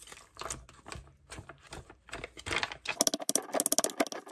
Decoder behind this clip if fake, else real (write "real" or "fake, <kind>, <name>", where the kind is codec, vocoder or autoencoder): real